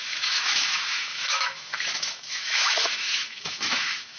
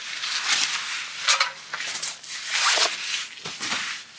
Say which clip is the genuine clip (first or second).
second